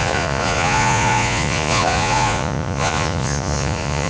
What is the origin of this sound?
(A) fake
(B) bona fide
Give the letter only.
A